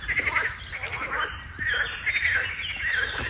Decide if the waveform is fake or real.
real